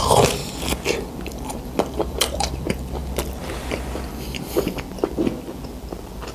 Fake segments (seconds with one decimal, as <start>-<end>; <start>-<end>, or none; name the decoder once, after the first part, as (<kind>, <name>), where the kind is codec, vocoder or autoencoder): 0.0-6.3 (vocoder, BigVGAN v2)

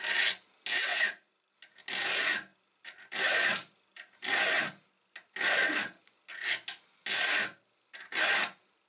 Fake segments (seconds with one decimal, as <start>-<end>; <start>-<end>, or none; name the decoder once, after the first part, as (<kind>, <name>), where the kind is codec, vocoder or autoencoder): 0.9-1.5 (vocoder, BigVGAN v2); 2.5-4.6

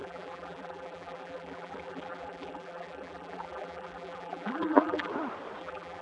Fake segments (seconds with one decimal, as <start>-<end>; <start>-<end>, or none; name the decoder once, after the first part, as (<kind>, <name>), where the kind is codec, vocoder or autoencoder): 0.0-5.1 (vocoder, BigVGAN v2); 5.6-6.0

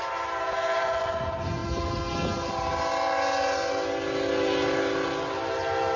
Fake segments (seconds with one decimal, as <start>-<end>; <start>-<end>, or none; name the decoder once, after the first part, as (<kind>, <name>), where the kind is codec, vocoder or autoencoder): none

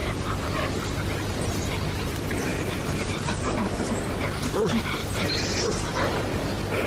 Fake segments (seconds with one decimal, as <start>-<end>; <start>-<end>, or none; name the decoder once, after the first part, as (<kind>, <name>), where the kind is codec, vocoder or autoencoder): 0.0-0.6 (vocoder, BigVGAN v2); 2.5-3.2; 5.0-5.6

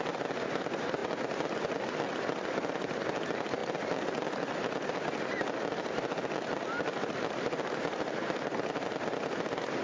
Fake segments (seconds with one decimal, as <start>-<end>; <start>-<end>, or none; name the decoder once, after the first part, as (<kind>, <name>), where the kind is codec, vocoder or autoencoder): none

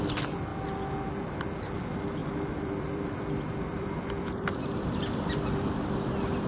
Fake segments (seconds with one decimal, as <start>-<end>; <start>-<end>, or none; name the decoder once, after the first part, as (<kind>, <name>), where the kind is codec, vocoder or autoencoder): 2.2-6.1 (vocoder, BigVGAN v2)